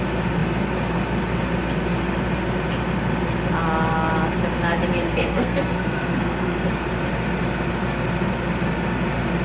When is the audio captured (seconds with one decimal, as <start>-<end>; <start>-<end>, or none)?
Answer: 0.0-5.1; 6.7-9.4